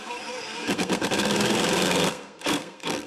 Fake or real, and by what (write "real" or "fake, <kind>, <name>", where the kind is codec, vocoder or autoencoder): fake, codec, SNAC